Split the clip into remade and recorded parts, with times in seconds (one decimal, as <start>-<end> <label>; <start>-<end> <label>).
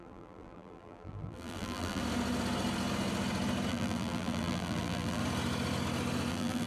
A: 0.0-2.0 remade; 2.0-3.7 recorded; 3.7-5.2 remade; 5.2-6.3 recorded; 6.3-6.7 remade